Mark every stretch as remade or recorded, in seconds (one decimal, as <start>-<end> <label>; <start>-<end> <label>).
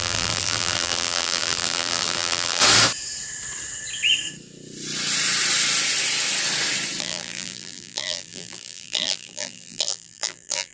0.0-2.6 remade; 2.6-7.0 recorded; 7.0-10.7 remade